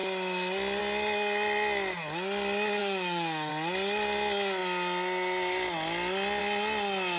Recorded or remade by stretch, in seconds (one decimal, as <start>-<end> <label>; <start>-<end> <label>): 0.0-2.8 recorded; 2.8-3.5 remade; 3.5-7.2 recorded